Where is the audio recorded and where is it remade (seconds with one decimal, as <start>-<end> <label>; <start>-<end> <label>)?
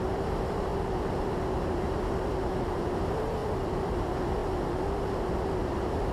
0.0-0.7 remade; 0.7-1.6 recorded; 1.6-3.4 remade; 3.4-3.9 recorded; 3.9-4.4 remade; 4.4-5.1 recorded; 5.1-6.1 remade